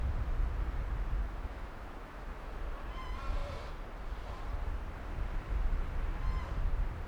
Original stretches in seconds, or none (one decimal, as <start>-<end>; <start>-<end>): 0.0-1.2; 2.5-7.1